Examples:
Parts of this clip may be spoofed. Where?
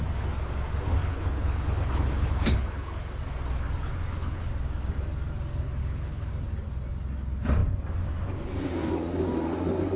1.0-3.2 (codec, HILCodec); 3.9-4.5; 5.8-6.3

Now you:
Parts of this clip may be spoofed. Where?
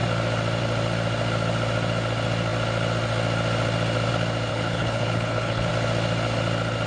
4.5-5.7 (codec, HILCodec)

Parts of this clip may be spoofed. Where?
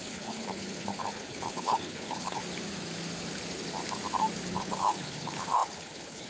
0.0-2.4 (codec, HILCodec); 4.5-6.3